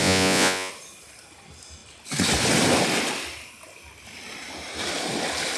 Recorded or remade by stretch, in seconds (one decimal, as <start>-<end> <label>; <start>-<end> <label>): 0.0-0.7 remade; 0.7-5.6 recorded